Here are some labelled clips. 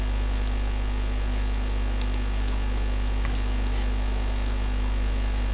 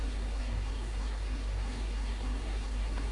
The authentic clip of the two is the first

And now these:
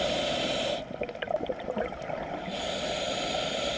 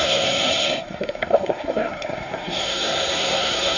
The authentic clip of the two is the first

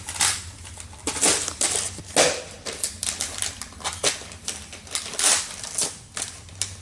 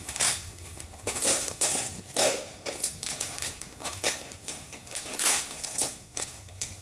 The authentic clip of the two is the first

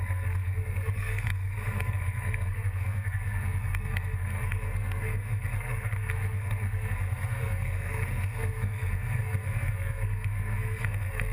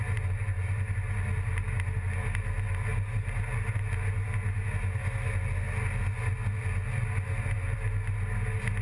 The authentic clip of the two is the second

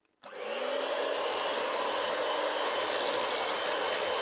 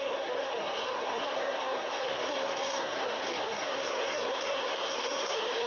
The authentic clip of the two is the first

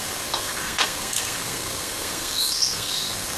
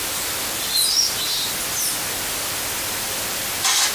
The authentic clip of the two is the second